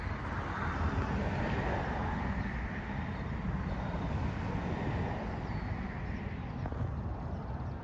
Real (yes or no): yes